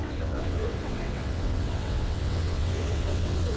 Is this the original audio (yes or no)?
no